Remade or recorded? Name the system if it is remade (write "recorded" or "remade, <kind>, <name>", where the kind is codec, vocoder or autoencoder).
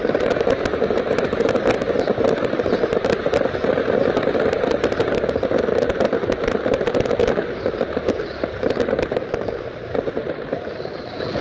recorded